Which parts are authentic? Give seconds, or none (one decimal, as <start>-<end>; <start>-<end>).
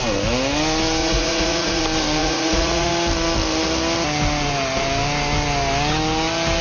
0.0-1.0; 1.8-2.2; 2.9-6.6